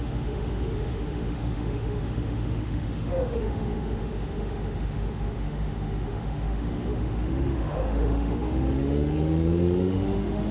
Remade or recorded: remade